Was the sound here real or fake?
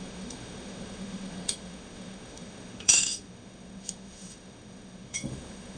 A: fake